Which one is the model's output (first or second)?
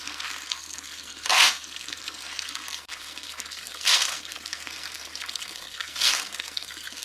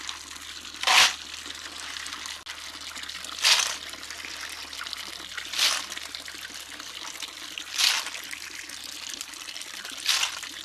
first